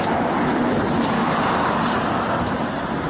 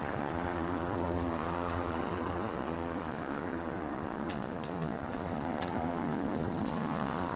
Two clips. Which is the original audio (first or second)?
first